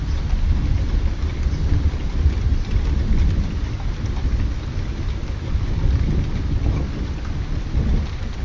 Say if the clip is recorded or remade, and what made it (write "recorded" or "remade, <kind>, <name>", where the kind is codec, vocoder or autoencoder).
recorded